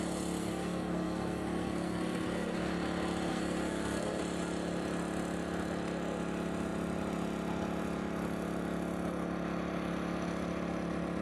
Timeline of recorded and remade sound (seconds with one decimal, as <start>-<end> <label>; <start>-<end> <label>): 0.0-0.4 recorded; 0.4-2.7 remade; 2.7-3.3 recorded; 3.3-4.2 remade; 4.2-11.2 recorded